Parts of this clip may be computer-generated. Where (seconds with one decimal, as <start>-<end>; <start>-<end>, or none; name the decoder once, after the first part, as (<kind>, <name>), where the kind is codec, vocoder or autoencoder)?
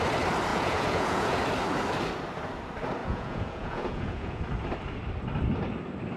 0.5-1.4 (vocoder, Vocos); 3.0-4.4